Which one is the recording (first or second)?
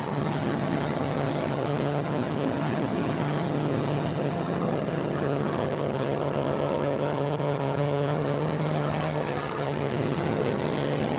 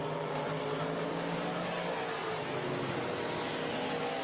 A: second